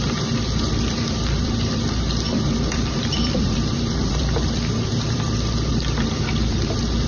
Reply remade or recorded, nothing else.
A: remade